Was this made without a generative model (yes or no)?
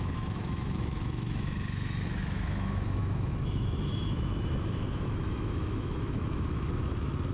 no